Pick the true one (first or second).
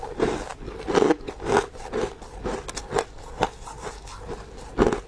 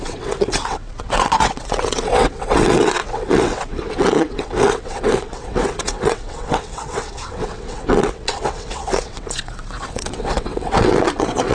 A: first